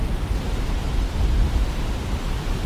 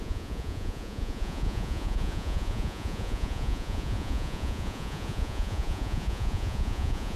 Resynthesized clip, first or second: second